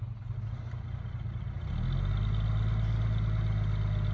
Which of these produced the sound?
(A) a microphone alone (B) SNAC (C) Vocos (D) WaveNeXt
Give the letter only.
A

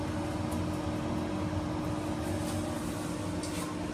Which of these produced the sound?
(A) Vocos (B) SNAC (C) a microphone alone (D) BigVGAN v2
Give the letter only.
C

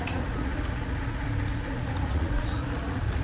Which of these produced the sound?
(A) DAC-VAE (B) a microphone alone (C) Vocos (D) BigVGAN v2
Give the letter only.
C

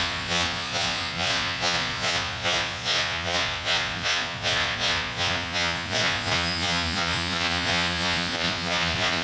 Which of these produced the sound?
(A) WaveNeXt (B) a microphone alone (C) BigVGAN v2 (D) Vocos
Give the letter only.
D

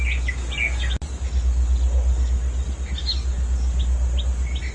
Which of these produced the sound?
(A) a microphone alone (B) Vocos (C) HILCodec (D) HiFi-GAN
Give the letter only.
A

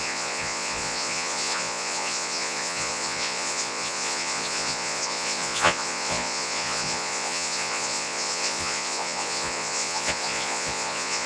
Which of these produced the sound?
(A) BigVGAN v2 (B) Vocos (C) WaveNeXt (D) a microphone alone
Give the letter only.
B